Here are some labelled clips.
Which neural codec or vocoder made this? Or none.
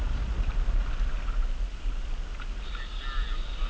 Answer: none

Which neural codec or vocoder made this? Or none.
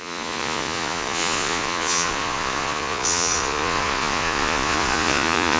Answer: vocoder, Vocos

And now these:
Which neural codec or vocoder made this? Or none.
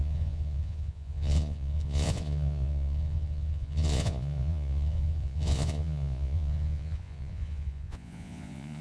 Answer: vocoder, Vocos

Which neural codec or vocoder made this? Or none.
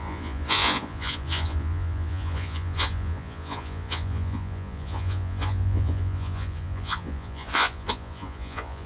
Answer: vocoder, Vocos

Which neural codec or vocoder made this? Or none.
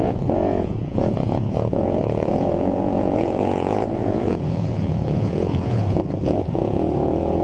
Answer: vocoder, Vocos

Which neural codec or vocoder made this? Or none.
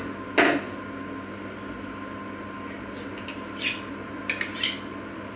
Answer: none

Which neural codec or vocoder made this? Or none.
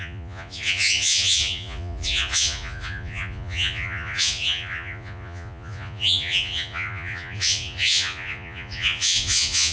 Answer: vocoder, Vocos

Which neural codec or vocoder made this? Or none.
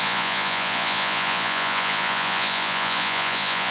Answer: vocoder, Vocos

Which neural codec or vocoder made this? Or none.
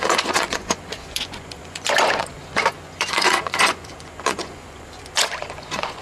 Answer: vocoder, Vocos